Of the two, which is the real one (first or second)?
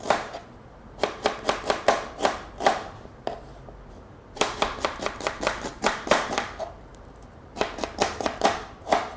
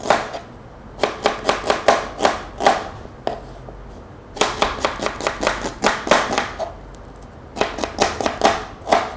second